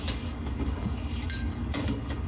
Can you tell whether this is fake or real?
fake